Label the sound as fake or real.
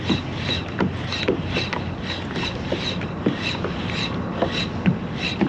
real